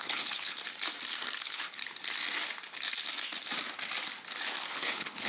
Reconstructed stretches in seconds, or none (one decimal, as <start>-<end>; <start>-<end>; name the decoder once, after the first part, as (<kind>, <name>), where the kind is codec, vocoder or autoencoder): 0.0-0.6 (codec, HILCodec); 1.4-1.8; 4.6-5.3